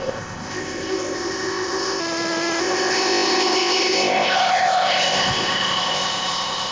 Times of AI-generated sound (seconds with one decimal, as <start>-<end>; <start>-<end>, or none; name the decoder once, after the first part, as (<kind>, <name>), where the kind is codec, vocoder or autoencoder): 0.0-2.0 (codec, ZipCodec); 2.6-6.7